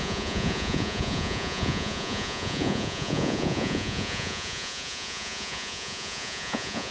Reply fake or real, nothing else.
fake